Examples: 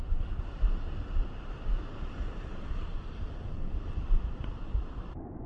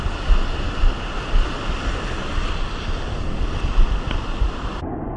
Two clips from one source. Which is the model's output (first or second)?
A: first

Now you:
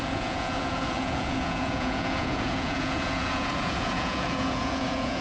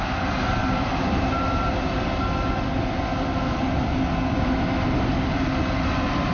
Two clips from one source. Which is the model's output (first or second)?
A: first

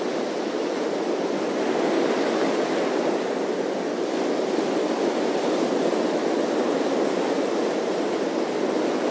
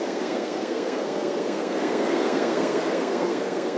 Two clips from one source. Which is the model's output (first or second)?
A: second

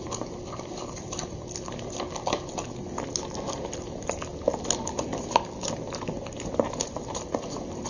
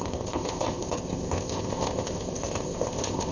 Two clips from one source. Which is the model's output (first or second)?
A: second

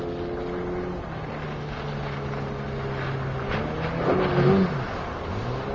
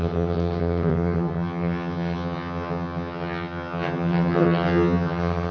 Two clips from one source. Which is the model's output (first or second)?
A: second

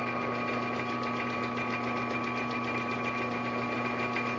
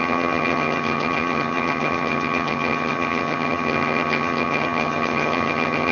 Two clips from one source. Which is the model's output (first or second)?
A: second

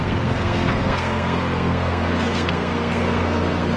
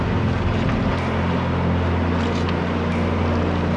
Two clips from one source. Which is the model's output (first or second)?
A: first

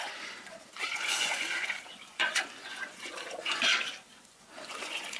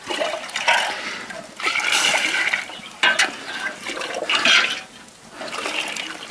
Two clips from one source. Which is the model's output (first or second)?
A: first